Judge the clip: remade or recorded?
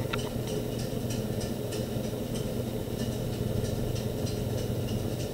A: recorded